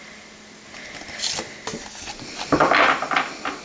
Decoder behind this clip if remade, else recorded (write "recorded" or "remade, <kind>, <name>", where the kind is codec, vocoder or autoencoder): recorded